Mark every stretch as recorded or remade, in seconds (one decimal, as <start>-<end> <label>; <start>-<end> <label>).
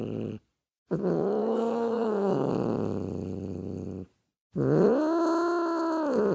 0.0-1.4 recorded; 1.4-2.5 remade; 2.5-6.3 recorded